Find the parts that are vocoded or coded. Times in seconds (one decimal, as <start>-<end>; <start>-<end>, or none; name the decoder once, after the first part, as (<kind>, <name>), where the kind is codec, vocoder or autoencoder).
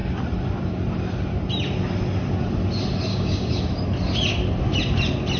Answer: 3.1-3.6 (codec, DAC)